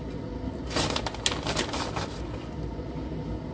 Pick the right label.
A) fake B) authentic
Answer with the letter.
B